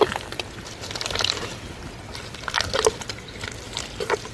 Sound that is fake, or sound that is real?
real